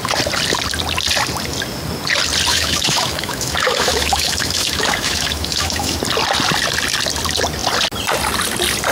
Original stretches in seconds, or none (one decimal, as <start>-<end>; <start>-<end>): 0.0-2.5; 6.0-8.9